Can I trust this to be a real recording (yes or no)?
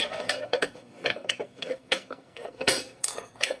no